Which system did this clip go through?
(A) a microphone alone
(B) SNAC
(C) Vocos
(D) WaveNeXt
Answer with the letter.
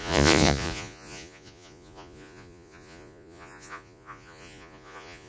C